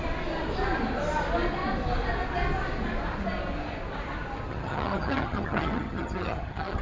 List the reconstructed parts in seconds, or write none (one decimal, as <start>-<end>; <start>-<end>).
4.5-6.8